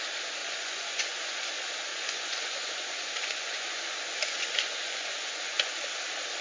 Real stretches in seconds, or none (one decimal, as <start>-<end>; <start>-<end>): 0.0-0.4; 1.5-1.9; 5.7-6.4